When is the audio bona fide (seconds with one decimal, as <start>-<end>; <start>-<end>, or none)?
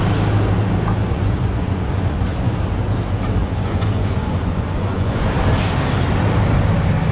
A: 0.0-1.0; 2.5-3.4; 5.3-7.1